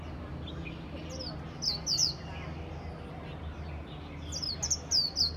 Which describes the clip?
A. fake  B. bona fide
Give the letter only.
B